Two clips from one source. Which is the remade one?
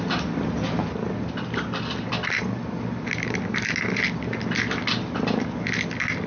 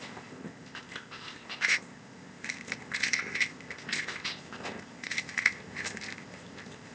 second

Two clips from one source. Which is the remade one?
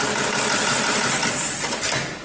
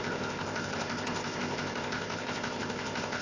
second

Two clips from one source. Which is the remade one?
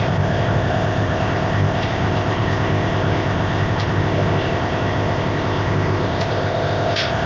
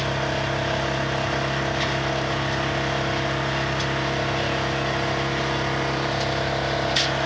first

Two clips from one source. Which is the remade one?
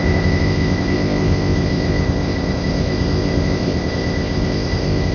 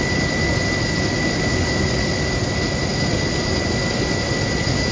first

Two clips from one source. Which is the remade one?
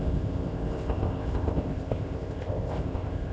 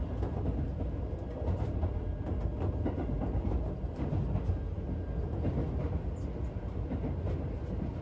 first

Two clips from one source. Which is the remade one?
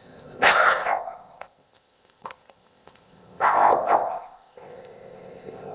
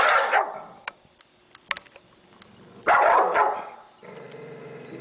first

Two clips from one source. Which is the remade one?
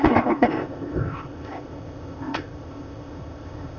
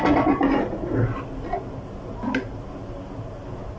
first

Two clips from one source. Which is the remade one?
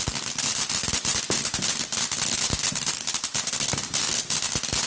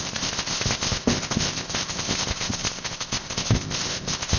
second